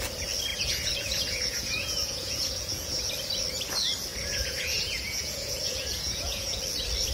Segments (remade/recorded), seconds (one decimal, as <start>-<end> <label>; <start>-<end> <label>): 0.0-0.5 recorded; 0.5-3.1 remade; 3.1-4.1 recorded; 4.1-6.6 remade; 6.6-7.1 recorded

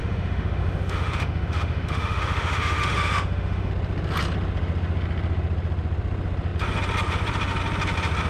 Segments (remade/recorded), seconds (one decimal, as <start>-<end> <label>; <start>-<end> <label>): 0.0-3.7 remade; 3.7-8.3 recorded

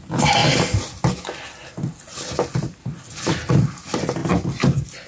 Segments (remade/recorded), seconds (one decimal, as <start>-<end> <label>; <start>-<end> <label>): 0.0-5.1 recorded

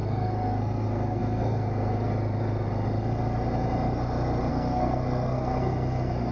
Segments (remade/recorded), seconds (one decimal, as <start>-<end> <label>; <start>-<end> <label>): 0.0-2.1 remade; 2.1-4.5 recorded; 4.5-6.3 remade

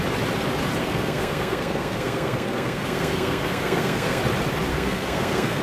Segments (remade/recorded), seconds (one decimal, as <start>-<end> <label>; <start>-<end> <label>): 0.0-0.8 recorded; 0.8-4.2 remade; 4.2-4.7 recorded; 4.7-5.6 remade

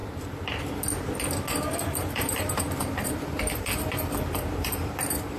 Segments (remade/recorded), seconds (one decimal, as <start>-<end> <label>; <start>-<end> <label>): 0.0-0.6 remade; 0.6-2.0 recorded; 2.0-5.4 remade

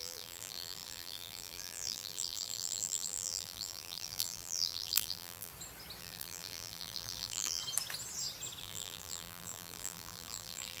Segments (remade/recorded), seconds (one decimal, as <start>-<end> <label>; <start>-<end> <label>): 0.0-5.5 remade; 5.5-6.0 recorded; 6.0-7.6 remade; 7.6-8.6 recorded; 8.6-10.8 remade